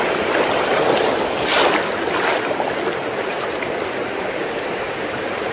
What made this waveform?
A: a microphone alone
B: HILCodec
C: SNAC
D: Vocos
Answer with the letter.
A